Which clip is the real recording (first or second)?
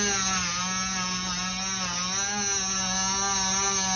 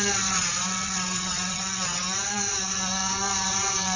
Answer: first